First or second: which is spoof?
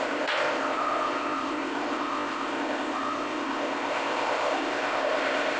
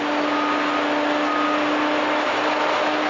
first